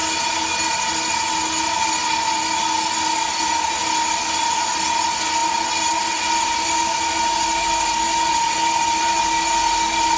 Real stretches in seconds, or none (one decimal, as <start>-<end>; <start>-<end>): 0.0-10.2